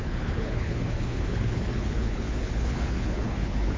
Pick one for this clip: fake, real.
fake